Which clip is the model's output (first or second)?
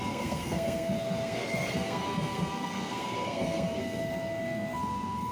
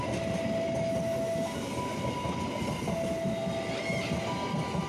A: first